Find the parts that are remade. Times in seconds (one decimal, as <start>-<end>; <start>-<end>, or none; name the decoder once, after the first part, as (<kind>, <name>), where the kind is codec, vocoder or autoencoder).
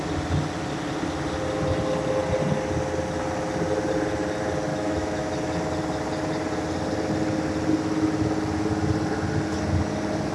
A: 4.7-5.2 (autoencoder, DAC-VAE)